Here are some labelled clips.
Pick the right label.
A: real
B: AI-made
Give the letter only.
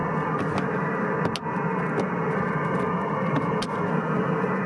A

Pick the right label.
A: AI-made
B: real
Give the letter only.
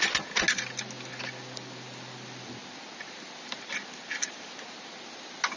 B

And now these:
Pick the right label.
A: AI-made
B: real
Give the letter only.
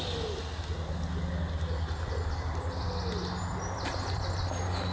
B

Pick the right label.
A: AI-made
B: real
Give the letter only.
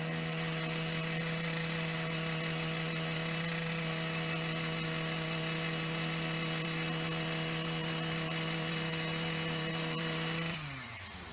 A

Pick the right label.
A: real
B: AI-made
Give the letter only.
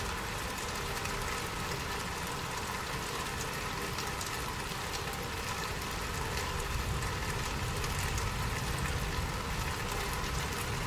A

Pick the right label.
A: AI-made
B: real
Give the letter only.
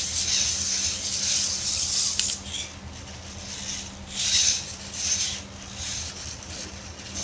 B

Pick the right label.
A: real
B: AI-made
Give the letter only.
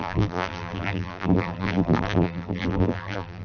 B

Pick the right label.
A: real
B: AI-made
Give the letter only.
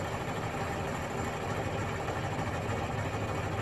A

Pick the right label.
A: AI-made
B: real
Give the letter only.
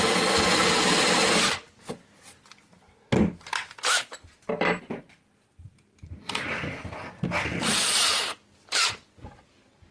A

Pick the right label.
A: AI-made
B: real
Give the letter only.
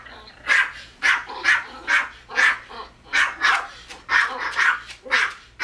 A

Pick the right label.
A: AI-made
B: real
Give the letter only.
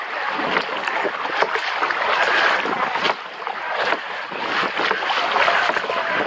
B